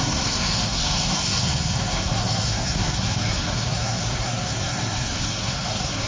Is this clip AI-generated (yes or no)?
yes